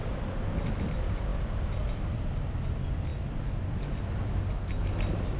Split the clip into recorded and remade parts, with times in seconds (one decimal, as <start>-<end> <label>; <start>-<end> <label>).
0.0-5.4 recorded

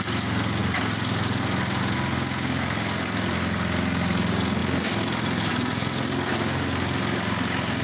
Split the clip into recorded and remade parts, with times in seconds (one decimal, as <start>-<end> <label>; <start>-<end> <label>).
0.0-4.6 recorded; 4.6-5.5 remade; 5.5-7.8 recorded

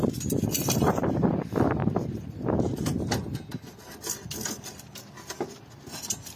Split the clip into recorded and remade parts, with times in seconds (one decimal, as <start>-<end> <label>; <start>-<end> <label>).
0.0-1.8 remade; 1.8-5.6 recorded; 5.6-6.4 remade

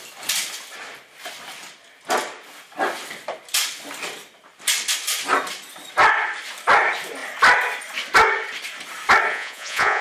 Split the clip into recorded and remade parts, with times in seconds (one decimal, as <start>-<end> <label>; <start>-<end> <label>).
0.0-9.3 recorded; 9.3-10.0 remade

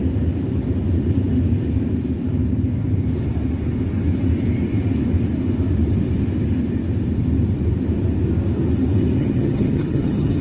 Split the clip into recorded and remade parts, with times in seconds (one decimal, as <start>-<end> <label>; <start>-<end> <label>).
0.0-9.2 recorded; 9.2-10.4 remade

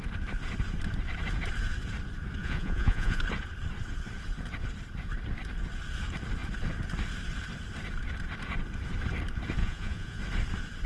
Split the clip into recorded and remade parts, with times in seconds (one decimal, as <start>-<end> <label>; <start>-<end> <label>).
0.0-2.4 recorded; 2.4-3.2 remade; 3.2-9.6 recorded; 9.6-10.2 remade; 10.2-10.9 recorded

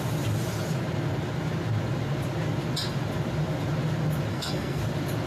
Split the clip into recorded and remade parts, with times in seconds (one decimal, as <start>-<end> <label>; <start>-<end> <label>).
0.0-4.3 recorded; 4.3-4.8 remade; 4.8-5.3 recorded

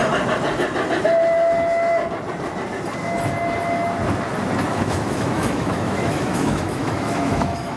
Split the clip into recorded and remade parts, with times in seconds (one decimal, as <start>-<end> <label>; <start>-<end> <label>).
0.0-4.7 recorded; 4.7-7.8 remade